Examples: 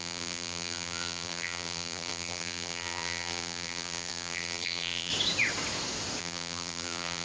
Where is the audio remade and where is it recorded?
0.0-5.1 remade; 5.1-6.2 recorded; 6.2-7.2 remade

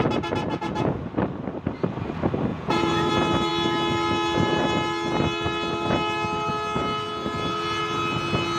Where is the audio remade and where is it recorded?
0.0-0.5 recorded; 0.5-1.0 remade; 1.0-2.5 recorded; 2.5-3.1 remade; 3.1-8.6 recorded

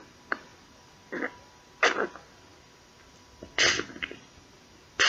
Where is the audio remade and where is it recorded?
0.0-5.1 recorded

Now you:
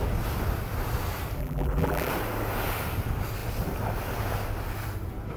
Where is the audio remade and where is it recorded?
0.0-1.4 recorded; 1.4-2.1 remade; 2.1-5.4 recorded

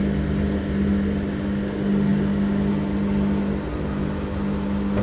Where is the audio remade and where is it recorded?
0.0-5.0 recorded

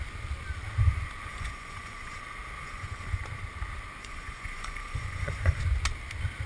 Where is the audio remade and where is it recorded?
0.0-1.3 recorded; 1.3-2.2 remade; 2.2-2.6 recorded; 2.6-3.2 remade; 3.2-4.0 recorded; 4.0-5.6 remade; 5.6-6.5 recorded